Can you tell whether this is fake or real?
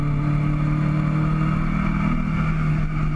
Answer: real